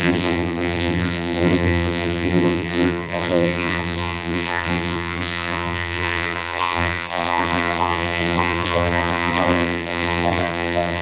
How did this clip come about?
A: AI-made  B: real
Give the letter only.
A